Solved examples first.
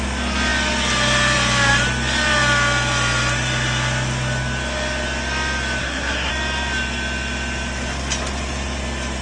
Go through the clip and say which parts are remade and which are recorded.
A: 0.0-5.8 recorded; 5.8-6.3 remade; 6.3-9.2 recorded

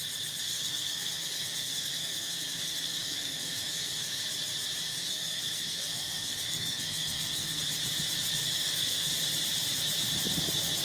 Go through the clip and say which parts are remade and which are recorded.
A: 0.0-0.5 recorded; 0.5-4.2 remade; 4.2-4.9 recorded; 4.9-7.6 remade; 7.6-8.4 recorded; 8.4-9.1 remade; 9.1-10.8 recorded

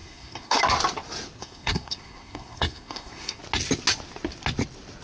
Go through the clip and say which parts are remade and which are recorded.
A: 0.0-0.6 remade; 0.6-1.4 recorded; 1.4-3.4 remade; 3.4-5.0 recorded

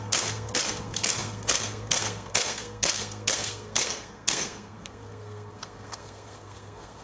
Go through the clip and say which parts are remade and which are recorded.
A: 0.0-7.0 remade

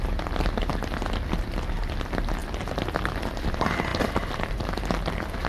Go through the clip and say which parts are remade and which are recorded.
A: 0.0-5.5 recorded

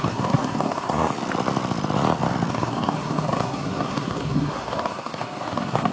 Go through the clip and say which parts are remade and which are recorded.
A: 0.0-1.1 remade; 1.1-2.5 recorded; 2.5-5.9 remade

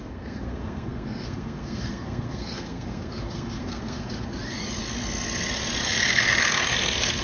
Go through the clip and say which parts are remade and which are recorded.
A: 0.0-4.3 remade; 4.3-7.2 recorded

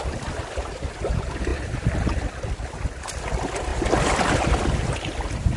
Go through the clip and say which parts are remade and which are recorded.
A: 0.0-5.6 recorded